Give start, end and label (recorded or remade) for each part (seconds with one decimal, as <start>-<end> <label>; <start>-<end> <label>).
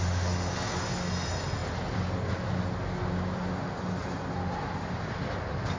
0.0-5.8 recorded